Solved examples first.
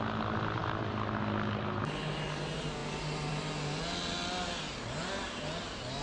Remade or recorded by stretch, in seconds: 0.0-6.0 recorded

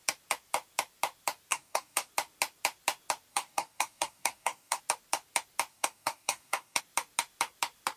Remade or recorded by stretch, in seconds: 0.0-1.5 recorded; 1.5-2.1 remade; 2.1-3.3 recorded; 3.3-4.8 remade; 4.8-5.7 recorded; 5.7-6.8 remade; 6.8-8.0 recorded